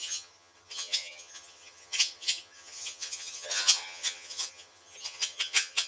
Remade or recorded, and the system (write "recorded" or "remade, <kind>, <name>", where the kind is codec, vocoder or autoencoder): remade, vocoder, HiFi-GAN